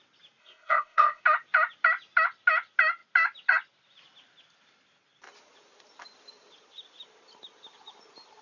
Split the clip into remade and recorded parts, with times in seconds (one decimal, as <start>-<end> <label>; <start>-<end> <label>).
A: 0.0-0.4 recorded; 0.4-1.2 remade; 1.2-8.4 recorded